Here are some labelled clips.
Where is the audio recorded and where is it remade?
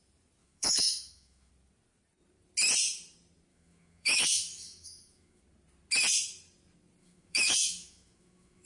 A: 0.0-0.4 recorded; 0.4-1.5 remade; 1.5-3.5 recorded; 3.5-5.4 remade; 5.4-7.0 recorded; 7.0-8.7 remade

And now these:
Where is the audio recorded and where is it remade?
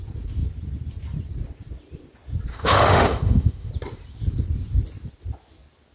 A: 0.0-2.5 recorded; 2.5-3.7 remade; 3.7-5.9 recorded